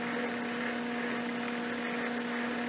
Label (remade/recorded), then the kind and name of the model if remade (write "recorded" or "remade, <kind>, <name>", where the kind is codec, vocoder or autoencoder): recorded